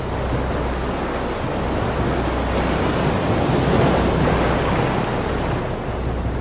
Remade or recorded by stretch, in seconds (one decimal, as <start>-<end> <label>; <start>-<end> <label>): 0.0-6.4 recorded